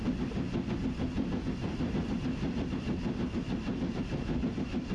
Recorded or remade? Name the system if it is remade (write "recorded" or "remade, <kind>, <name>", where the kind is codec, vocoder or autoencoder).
recorded